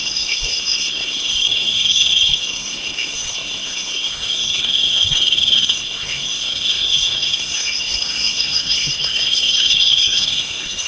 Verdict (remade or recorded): remade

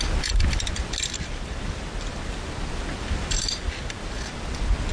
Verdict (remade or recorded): recorded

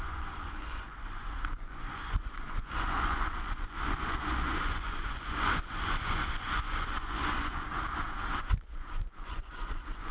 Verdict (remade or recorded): remade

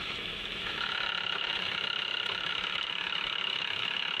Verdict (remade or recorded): remade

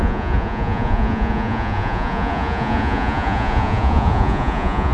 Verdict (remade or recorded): remade